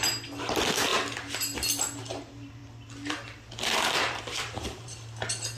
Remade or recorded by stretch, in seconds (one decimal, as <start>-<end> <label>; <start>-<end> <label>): 0.0-0.9 remade; 0.9-2.0 recorded; 2.0-2.6 remade; 2.6-4.0 recorded; 4.0-5.6 remade